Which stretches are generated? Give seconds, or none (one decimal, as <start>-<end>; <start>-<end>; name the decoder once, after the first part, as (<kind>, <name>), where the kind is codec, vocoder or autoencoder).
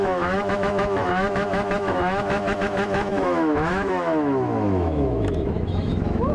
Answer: 0.0-6.3 (autoencoder, DAC-VAE)